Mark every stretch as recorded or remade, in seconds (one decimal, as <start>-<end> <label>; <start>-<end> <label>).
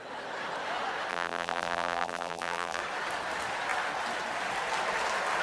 0.0-1.1 recorded; 1.1-2.8 remade; 2.8-5.4 recorded